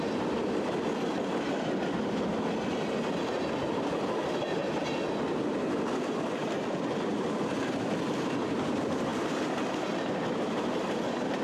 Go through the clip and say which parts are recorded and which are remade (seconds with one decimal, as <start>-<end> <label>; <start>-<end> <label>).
0.0-4.6 remade; 4.6-7.3 recorded; 7.3-9.1 remade; 9.1-9.9 recorded; 9.9-11.4 remade